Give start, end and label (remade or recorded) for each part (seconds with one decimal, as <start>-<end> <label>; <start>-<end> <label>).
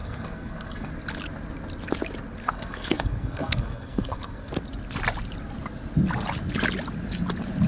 0.0-0.9 remade; 0.9-2.4 recorded; 2.4-4.5 remade; 4.5-7.7 recorded